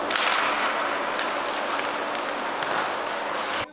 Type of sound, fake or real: real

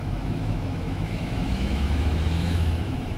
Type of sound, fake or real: fake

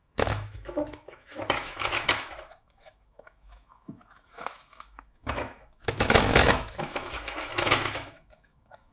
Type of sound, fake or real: fake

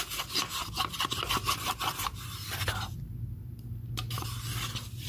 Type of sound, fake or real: real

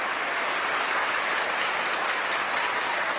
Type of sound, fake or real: real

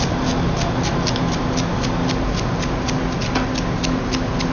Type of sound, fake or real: real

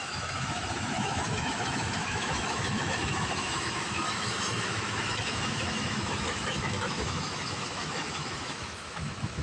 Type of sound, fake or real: fake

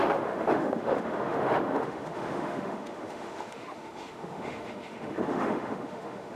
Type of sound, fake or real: fake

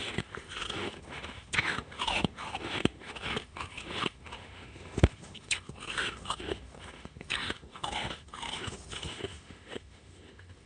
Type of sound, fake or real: fake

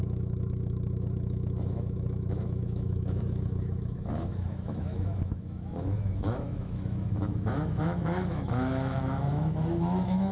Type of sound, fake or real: fake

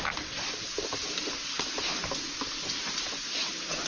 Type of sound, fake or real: real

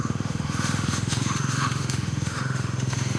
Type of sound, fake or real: fake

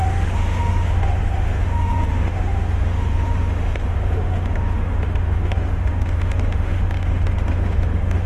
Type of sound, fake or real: fake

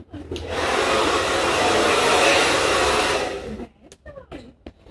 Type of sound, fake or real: real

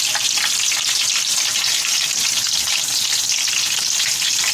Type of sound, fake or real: real